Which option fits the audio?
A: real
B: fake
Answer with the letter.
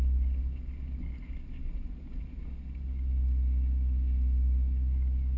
A